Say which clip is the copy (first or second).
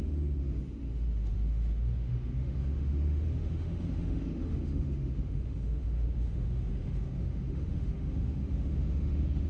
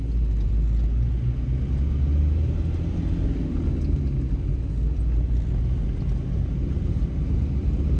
first